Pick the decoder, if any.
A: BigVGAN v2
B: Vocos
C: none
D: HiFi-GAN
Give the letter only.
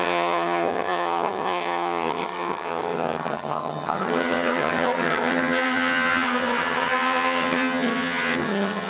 D